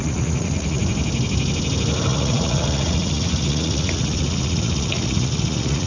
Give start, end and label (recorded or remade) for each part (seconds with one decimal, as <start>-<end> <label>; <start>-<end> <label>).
0.0-0.8 remade; 0.8-2.1 recorded; 2.1-5.9 remade